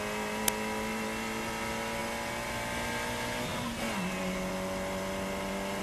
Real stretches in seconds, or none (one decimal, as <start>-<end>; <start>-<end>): 0.0-5.8

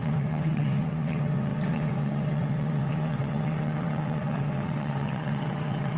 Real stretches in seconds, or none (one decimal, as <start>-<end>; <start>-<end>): none

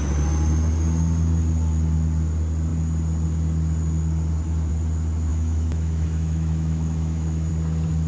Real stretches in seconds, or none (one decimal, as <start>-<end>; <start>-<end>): 0.0-5.3; 7.5-8.1